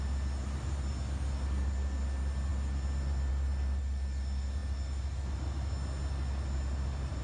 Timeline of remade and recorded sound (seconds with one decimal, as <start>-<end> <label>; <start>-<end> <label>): 0.0-7.2 recorded